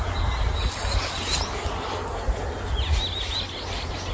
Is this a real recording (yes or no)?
yes